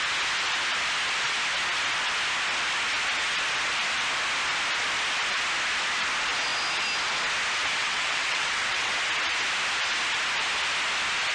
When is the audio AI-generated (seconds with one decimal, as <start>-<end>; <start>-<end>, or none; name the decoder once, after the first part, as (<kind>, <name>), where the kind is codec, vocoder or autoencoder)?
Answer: 7.8-8.9 (vocoder, WaveNeXt)